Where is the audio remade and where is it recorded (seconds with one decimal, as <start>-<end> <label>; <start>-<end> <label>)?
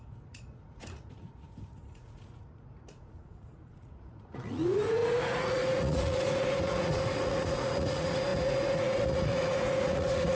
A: 0.0-10.4 remade